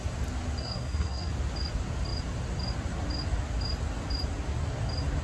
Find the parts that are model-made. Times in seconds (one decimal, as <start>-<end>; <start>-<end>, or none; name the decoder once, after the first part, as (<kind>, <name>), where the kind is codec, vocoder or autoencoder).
0.6-1.3 (codec, SNAC)